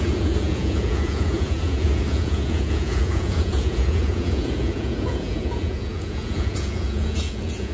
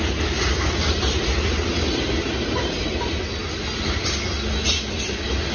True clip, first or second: second